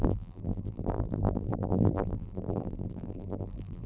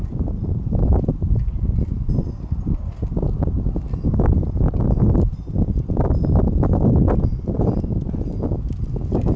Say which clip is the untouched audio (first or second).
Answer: second